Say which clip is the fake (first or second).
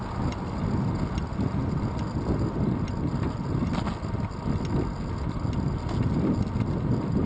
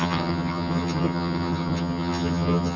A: second